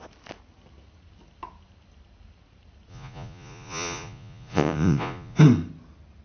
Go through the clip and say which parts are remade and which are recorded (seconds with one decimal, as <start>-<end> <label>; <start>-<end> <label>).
0.0-2.9 recorded; 2.9-5.4 remade; 5.4-6.2 recorded